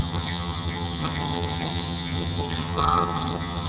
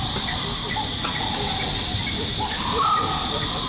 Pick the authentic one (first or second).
second